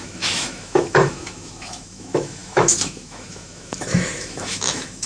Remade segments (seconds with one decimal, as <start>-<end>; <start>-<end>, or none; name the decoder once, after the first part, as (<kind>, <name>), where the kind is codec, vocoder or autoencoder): 0.0-5.1 (autoencoder, DAC-VAE)